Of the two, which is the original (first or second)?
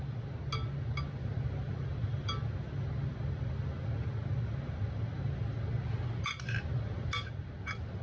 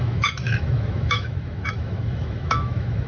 first